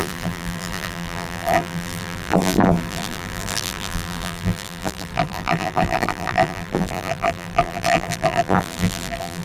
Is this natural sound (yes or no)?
no